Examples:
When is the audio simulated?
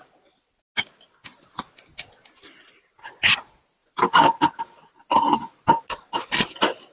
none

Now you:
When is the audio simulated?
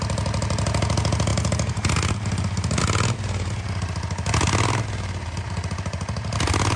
none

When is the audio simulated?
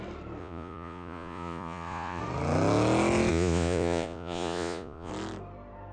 0.4-2.2; 3.3-5.1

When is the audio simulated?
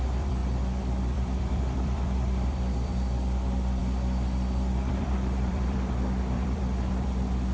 0.0-3.8; 4.9-7.5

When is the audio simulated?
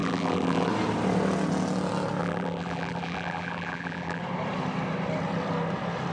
0.0-0.7; 2.2-4.2